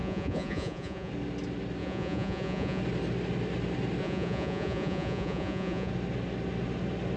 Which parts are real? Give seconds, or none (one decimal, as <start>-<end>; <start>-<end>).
1.1-1.8; 2.8-4.0; 5.9-7.2